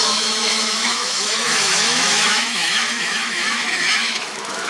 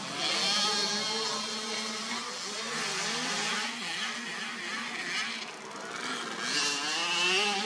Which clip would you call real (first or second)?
second